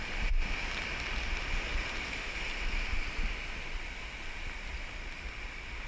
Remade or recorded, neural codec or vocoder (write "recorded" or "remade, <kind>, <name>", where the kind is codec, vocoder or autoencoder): recorded